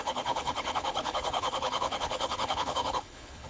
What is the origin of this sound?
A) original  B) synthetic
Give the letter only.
B